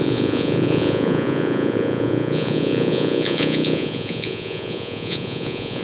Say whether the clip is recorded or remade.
remade